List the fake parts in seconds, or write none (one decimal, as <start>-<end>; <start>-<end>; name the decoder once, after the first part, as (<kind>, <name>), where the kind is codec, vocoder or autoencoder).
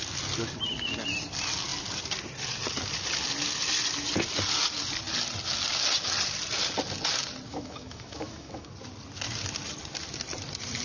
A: 7.5-8.7 (autoencoder, DAC-VAE)